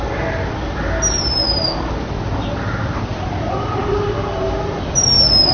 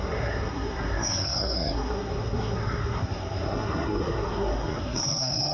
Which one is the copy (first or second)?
second